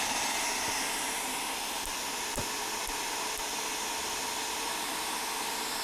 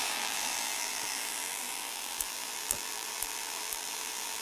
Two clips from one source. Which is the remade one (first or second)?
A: second